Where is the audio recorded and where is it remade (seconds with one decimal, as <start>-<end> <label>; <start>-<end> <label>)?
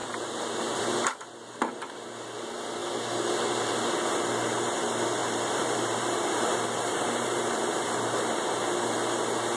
0.0-0.8 remade; 0.8-5.2 recorded; 5.2-8.5 remade; 8.5-9.6 recorded